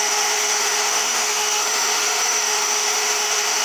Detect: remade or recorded remade